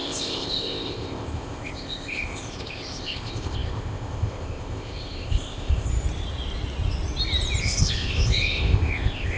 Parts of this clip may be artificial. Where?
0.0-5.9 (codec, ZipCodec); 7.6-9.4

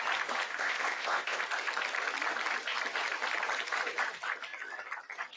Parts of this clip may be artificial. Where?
0.5-1.4 (codec, ZipCodec)

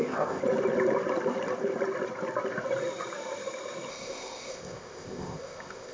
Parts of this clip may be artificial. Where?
0.0-0.4 (codec, ZipCodec); 3.9-5.9